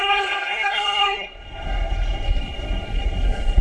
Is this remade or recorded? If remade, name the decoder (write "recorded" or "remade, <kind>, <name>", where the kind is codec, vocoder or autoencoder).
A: remade, codec, SNAC